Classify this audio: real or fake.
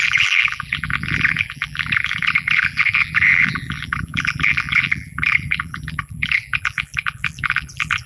fake